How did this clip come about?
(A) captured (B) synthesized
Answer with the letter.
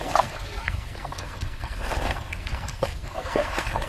B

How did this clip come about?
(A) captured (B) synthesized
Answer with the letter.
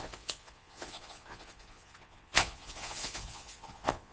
B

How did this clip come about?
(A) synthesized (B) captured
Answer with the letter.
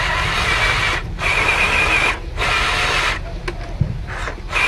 B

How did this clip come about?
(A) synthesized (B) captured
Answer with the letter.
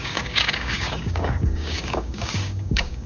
A